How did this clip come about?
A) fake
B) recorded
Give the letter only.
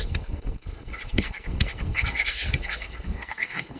A